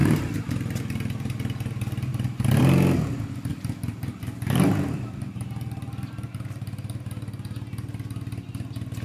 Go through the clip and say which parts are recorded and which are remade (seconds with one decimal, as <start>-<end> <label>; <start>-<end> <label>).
0.0-0.5 remade; 0.5-2.1 recorded; 2.1-2.6 remade; 2.6-3.5 recorded; 3.5-7.1 remade; 7.1-9.0 recorded